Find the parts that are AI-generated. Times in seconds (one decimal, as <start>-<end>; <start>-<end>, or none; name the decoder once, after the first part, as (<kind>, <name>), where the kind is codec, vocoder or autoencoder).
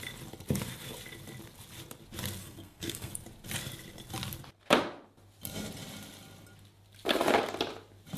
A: 2.4-3.1 (codec, SNAC)